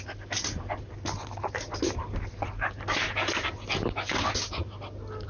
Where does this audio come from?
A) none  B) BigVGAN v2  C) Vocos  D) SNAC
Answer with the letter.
A